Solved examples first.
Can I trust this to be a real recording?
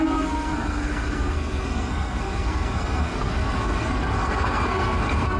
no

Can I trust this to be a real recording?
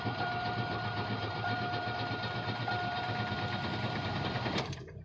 no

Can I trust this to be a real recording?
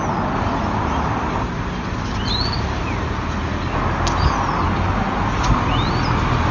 yes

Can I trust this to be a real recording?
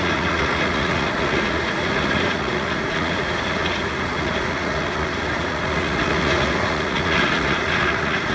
no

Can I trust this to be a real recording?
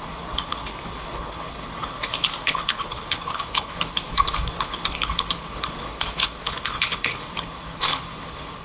no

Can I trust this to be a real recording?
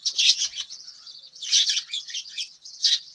no